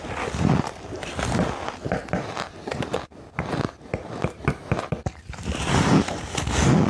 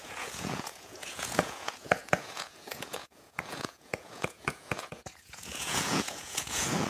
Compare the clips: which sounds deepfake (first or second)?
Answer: second